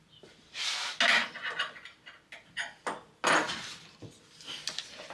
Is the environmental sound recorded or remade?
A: recorded